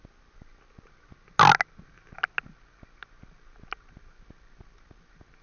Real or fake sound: real